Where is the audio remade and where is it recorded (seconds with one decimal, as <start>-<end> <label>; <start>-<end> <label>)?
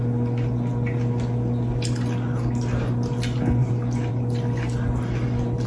0.0-5.7 recorded